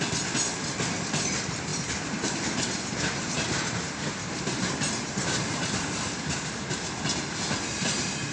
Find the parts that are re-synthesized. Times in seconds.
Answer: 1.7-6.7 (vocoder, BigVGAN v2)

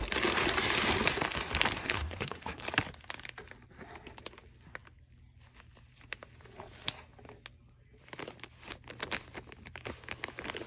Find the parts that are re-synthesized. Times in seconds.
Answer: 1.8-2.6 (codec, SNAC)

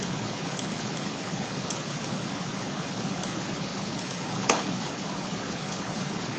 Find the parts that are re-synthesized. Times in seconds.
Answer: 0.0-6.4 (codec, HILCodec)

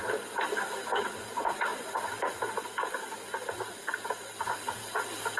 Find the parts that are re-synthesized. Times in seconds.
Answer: 1.7-2.3 (vocoder, BigVGAN v2)

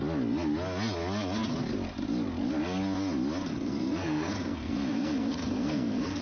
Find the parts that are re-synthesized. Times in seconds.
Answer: 3.5-6.2 (codec, SNAC)

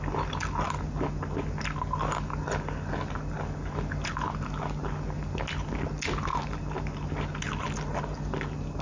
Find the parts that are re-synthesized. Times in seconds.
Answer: none

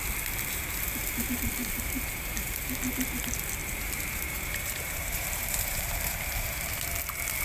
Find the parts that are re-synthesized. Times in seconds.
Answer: 1.6-2.7 (vocoder, BigVGAN v2); 3.6-6.7

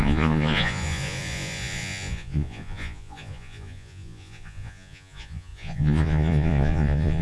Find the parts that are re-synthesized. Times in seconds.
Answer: 0.0-7.2 (vocoder, Vocos)